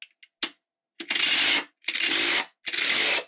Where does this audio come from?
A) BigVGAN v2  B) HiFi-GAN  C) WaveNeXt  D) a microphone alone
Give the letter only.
D